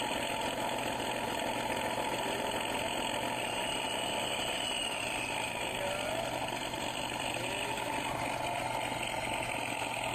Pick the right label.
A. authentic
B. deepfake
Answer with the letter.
A